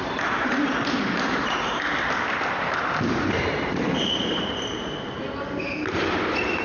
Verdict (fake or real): fake